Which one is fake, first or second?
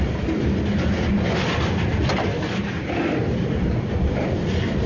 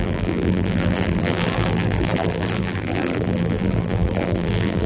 second